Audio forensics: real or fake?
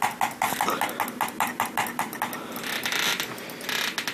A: real